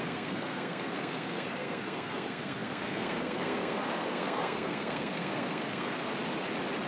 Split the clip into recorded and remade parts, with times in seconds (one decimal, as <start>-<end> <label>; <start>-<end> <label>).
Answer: 0.0-6.1 remade; 6.1-6.9 recorded